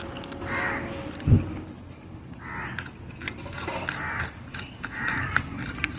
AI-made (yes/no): no